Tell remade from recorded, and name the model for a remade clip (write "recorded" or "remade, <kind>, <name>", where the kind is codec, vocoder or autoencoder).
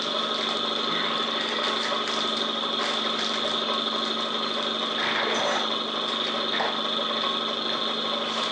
recorded